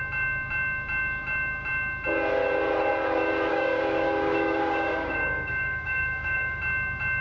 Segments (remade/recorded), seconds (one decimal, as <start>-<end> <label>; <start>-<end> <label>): 0.0-3.5 recorded; 3.5-6.6 remade; 6.6-7.2 recorded